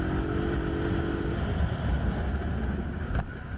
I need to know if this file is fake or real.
real